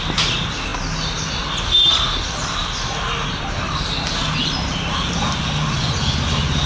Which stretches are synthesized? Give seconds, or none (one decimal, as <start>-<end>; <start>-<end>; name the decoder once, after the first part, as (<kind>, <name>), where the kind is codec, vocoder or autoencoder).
none